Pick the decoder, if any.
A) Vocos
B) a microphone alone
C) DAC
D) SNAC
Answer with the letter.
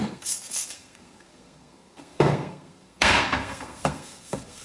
D